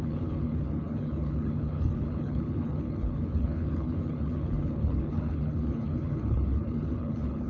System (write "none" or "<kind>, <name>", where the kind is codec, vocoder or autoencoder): codec, HILCodec